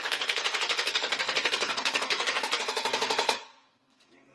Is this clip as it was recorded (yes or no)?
no